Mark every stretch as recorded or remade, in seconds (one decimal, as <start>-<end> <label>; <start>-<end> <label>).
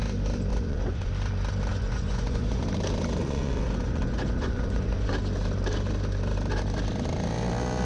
0.0-0.5 recorded; 0.5-1.1 remade; 1.1-1.7 recorded; 1.7-2.6 remade; 2.6-3.2 recorded; 3.2-5.1 remade; 5.1-7.8 recorded